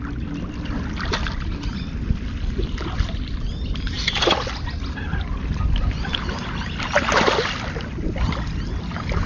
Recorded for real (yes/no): yes